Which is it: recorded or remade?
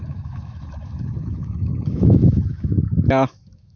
remade